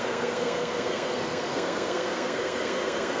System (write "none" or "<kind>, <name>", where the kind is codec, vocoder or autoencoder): codec, SNAC